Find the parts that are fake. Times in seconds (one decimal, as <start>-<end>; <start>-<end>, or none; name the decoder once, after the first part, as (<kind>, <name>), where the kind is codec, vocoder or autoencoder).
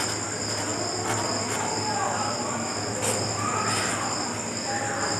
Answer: none